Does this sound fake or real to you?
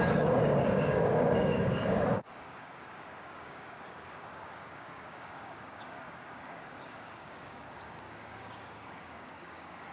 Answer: fake